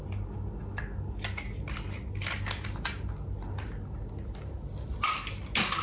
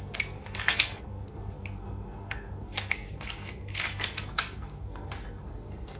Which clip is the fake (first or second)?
second